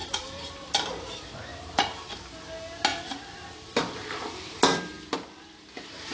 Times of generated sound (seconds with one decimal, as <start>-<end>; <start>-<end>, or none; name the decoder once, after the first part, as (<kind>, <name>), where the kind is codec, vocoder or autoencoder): 0.0-0.7 (vocoder, BigVGAN v2); 1.5-2.1; 2.9-4.6